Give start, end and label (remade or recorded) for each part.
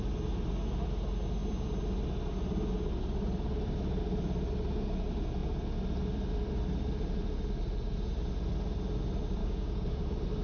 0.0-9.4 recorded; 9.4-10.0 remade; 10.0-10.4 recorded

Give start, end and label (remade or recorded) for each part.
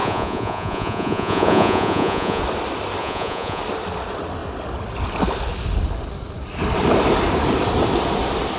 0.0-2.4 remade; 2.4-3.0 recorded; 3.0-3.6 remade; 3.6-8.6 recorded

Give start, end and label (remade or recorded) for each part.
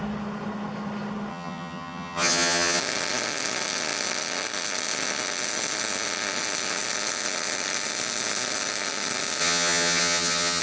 0.0-1.3 recorded; 1.3-2.8 remade; 2.8-9.4 recorded; 9.4-10.6 remade